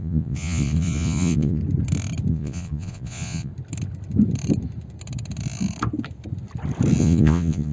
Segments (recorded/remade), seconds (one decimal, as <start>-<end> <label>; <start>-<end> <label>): 0.0-1.6 remade; 1.6-2.3 recorded; 2.3-3.5 remade; 3.5-7.0 recorded; 7.0-7.7 remade